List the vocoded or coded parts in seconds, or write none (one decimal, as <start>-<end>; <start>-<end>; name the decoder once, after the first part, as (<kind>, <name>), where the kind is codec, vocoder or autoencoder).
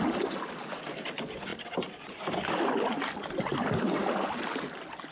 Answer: none